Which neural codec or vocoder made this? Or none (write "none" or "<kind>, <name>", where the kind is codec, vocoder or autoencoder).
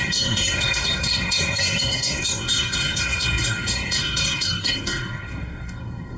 codec, SNAC